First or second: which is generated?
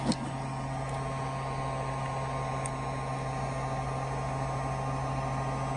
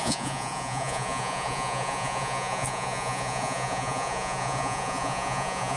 second